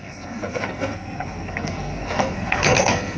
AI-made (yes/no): yes